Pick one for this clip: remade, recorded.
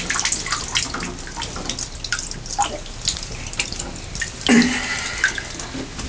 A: recorded